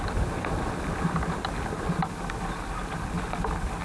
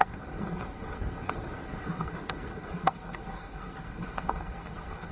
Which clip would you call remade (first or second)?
second